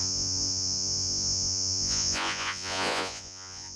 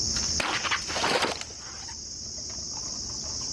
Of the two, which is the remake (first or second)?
first